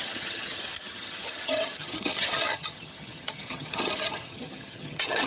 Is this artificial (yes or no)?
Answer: yes